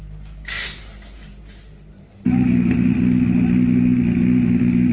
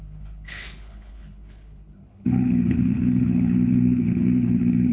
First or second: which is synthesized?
second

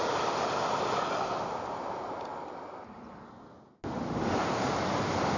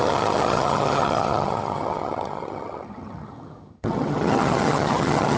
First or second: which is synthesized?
second